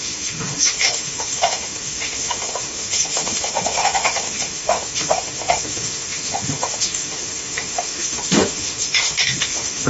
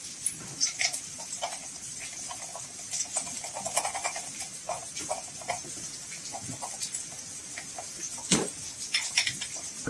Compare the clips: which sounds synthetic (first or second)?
first